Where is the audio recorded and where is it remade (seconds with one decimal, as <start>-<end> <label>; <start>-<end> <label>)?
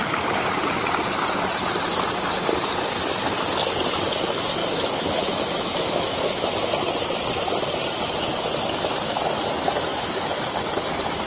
0.0-4.6 recorded; 4.6-6.7 remade; 6.7-9.9 recorded; 9.9-10.6 remade; 10.6-11.3 recorded